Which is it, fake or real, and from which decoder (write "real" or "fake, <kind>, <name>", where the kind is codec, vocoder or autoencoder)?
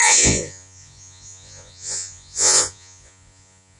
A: fake, vocoder, Vocos